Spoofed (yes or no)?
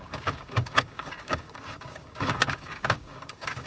yes